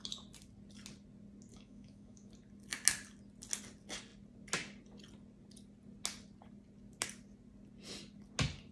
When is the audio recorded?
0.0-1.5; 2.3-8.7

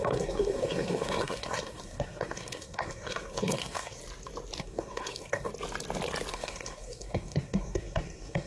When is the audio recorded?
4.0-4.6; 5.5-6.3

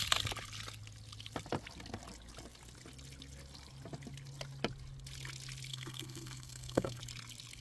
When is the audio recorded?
0.0-5.7; 7.0-7.6

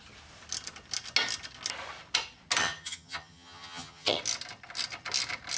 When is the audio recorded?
0.0-2.6; 4.2-5.6